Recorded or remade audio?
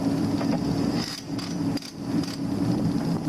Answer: recorded